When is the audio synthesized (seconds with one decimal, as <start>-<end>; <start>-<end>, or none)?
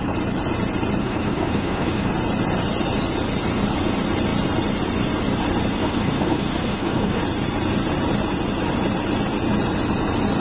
1.0-2.1; 5.8-7.2